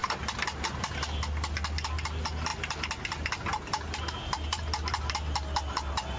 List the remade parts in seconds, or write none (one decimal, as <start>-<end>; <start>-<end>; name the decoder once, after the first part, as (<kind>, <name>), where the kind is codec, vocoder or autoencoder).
none